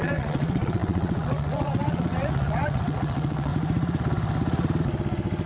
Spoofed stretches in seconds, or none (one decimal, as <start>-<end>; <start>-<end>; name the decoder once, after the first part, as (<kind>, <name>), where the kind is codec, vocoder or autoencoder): 0.0-3.5 (vocoder, WaveNeXt)